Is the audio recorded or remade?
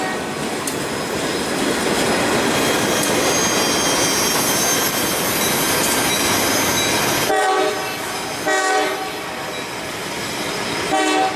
recorded